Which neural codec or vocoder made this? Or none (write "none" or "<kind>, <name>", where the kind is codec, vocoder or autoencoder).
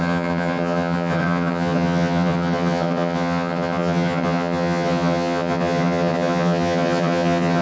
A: vocoder, HiFi-GAN